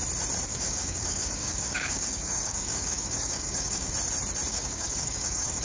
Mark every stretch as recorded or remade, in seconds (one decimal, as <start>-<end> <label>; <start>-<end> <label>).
0.0-0.5 recorded; 0.5-3.9 remade; 3.9-4.5 recorded; 4.5-5.6 remade